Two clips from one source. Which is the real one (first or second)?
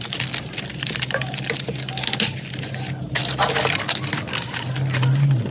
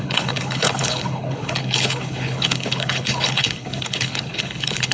first